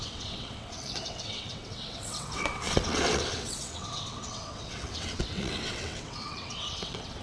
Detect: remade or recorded remade